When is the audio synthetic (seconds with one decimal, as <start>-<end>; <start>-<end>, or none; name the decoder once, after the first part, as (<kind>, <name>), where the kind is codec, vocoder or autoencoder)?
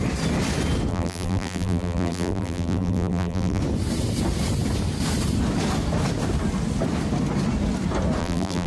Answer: 0.9-3.6 (vocoder, BigVGAN v2); 8.2-8.7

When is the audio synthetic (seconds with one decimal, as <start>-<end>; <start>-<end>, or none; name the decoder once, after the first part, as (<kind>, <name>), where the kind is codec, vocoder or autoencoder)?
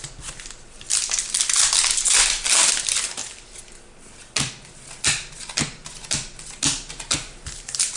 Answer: none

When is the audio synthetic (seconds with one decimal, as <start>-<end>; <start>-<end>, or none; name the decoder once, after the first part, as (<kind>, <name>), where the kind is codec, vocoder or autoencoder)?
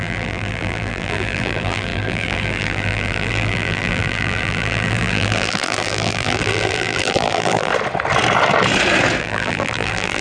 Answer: 0.0-7.7 (vocoder, BigVGAN v2); 9.2-10.2